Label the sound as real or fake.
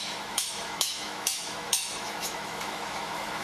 fake